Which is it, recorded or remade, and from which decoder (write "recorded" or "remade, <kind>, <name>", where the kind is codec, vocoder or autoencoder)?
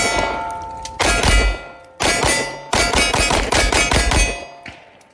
recorded